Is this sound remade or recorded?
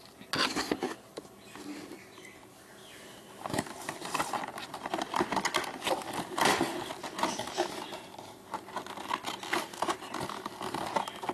recorded